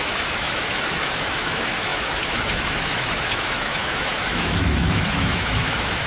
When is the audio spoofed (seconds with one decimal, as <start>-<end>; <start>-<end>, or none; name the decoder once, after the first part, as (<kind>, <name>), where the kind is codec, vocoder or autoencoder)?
0.0-6.1 (autoencoder, DAC-VAE)